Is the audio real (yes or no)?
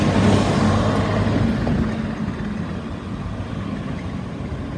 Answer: yes